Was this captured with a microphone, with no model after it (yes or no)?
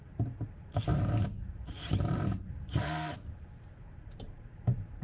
no